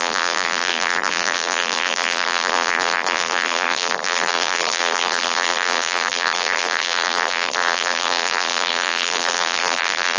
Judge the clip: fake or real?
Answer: fake